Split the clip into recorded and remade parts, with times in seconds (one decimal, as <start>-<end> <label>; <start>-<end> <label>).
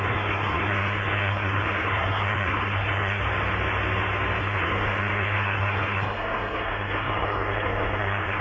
0.0-3.2 remade; 3.2-4.4 recorded; 4.4-8.4 remade